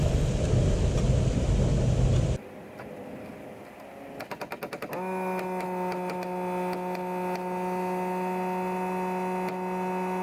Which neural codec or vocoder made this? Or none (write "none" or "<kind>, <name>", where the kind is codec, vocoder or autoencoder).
none